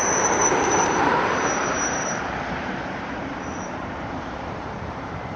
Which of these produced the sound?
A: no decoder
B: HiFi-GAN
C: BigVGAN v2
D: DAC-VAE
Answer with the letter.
C